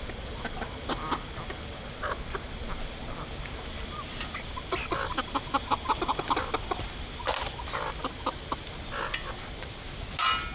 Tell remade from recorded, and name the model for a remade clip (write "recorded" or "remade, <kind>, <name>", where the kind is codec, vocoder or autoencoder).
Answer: recorded